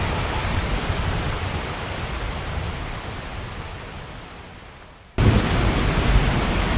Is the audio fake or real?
real